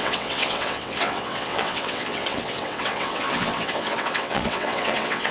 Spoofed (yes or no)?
yes